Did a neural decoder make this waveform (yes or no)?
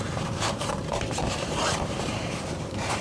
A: yes